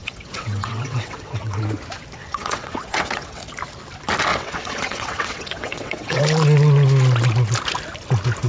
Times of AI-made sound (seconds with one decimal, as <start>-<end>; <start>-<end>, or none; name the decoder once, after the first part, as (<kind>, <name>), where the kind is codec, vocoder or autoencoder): 0.0-1.6 (vocoder, WaveNeXt); 2.2-3.4; 4.3-6.2

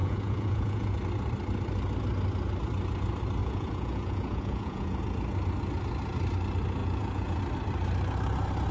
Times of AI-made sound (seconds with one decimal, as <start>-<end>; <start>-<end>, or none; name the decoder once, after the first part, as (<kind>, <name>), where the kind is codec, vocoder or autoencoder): 0.0-1.0 (vocoder, Vocos); 3.4-5.0; 6.8-7.4

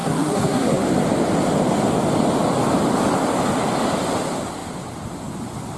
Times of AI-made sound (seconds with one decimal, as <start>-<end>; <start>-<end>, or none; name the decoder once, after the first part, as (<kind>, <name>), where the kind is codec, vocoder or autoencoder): 0.0-0.8 (codec, SNAC)

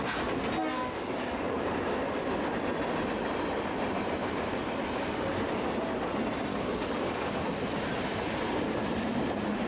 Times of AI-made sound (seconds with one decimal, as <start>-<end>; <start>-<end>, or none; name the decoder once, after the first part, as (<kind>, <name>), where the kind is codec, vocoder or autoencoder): 0.8-1.6 (codec, DAC); 6.5-7.4

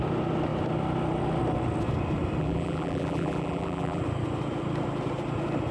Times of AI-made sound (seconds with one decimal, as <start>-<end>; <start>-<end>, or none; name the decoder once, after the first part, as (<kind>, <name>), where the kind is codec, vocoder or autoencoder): 2.4-4.0 (vocoder, BigVGAN v2)